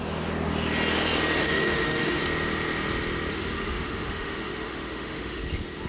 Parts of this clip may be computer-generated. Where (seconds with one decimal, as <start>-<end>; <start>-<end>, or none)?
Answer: 1.4-2.2; 3.3-5.4